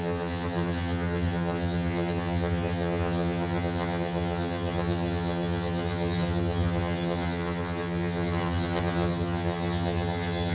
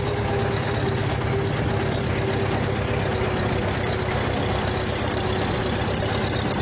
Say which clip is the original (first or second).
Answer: second